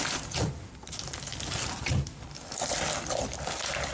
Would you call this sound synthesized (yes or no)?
yes